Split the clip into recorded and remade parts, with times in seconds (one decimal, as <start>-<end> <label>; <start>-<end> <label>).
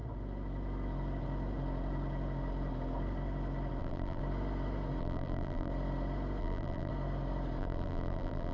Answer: 0.0-3.8 recorded; 3.8-4.2 remade; 4.2-5.0 recorded; 5.0-5.7 remade; 5.7-6.4 recorded; 6.4-6.9 remade; 6.9-7.6 recorded; 7.6-8.5 remade